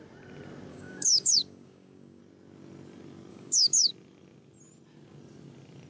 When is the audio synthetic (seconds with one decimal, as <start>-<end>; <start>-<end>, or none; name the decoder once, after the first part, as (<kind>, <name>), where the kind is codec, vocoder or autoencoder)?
0.7-2.2 (codec, DAC); 3.3-3.9